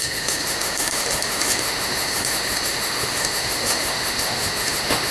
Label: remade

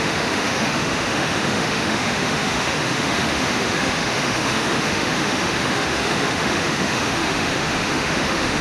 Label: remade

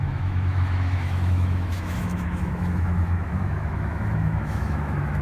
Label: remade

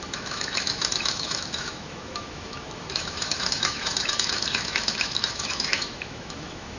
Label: remade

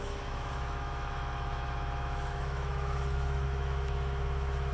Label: remade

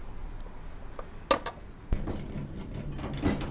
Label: recorded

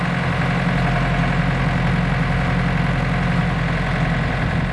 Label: recorded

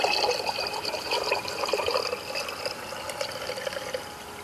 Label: recorded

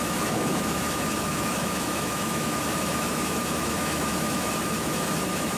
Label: remade